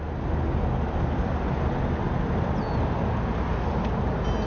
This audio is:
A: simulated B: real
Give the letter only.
B